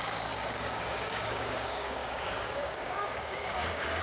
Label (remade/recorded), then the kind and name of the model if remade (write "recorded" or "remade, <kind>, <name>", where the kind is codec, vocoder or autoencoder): remade, codec, DAC